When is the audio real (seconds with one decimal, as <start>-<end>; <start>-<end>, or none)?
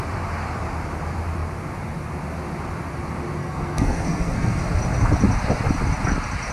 0.0-3.4; 4.6-6.5